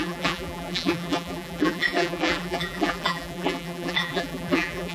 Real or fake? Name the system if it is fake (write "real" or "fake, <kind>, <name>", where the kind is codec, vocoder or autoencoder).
fake, vocoder, BigVGAN v2